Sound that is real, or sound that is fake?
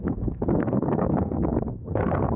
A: fake